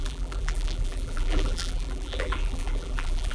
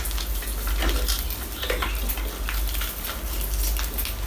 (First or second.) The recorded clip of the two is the second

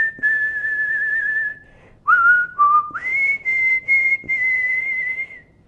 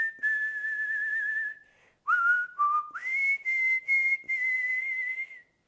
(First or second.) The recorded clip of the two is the second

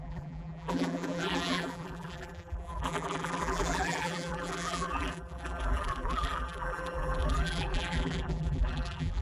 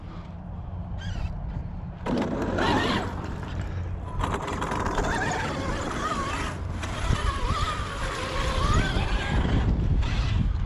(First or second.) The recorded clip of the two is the second